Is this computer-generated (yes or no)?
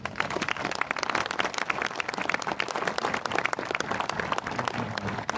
no